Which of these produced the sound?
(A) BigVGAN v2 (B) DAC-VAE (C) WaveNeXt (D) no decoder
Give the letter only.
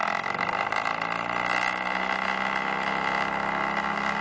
D